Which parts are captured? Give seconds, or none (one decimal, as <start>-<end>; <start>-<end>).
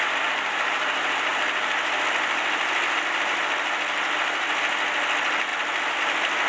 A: 0.0-6.5